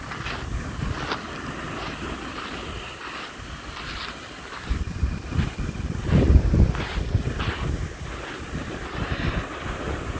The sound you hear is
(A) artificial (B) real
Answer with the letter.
B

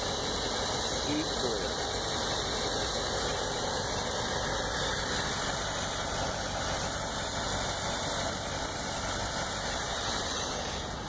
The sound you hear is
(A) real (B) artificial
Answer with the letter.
A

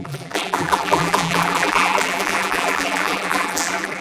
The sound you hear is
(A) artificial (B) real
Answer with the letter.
A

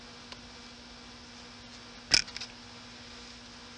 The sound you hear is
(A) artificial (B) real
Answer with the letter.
B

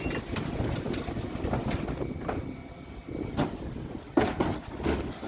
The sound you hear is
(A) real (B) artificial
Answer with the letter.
A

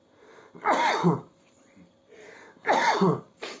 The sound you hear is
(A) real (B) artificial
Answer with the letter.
B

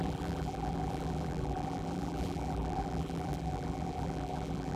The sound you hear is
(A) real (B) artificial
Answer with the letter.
B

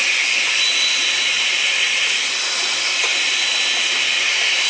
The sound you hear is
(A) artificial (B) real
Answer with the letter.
A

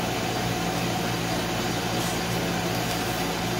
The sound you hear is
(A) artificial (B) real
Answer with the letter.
B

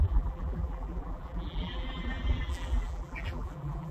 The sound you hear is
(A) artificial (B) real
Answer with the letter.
A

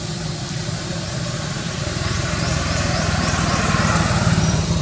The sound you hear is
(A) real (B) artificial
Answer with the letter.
B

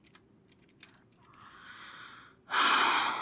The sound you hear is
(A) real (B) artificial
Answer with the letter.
B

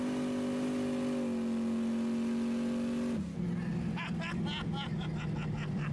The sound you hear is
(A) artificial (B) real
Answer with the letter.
B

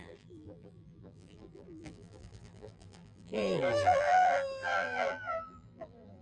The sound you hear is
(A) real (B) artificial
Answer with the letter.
B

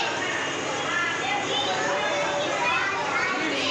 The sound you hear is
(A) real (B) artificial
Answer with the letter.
A